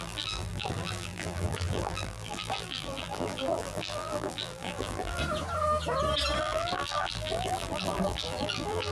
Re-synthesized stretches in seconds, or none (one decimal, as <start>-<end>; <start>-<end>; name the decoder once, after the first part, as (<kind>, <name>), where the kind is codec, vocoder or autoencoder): 0.0-5.2 (vocoder, BigVGAN v2); 6.4-8.9